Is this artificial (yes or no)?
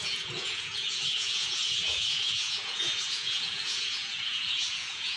yes